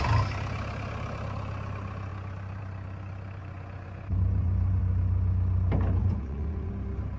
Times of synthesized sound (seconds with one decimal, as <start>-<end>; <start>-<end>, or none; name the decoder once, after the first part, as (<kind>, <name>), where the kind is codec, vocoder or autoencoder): 3.4-4.8 (vocoder, Vocos); 6.0-6.7